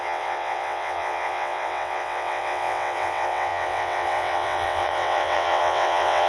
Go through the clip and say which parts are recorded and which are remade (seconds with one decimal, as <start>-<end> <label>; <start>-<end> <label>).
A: 0.0-6.3 remade